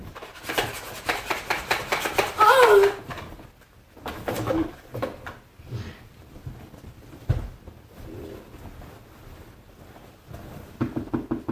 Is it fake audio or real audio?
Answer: real